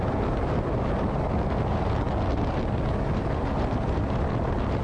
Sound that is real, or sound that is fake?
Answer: real